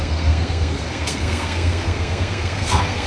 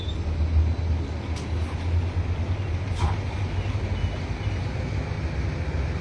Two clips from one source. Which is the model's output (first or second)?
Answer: first